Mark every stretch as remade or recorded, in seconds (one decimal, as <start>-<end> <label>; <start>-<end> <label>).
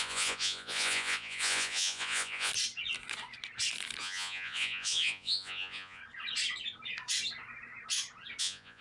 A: 0.0-2.5 remade; 2.5-4.0 recorded; 4.0-6.0 remade; 6.0-8.4 recorded; 8.4-8.8 remade